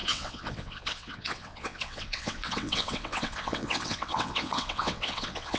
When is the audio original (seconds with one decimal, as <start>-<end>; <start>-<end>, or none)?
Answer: none